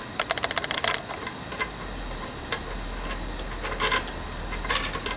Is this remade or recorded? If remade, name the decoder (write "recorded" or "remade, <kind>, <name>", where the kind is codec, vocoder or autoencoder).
recorded